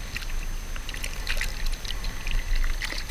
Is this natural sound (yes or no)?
yes